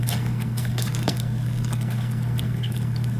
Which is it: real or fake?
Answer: fake